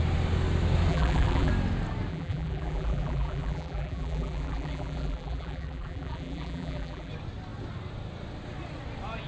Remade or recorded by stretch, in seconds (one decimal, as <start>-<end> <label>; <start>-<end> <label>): 0.0-0.9 recorded; 0.9-1.5 remade; 1.5-2.1 recorded; 2.1-7.1 remade; 7.1-9.3 recorded